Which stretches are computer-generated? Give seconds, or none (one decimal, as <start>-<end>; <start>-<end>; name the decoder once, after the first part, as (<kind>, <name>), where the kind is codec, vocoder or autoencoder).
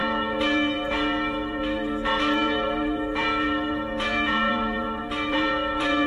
0.0-6.1 (vocoder, BigVGAN v2)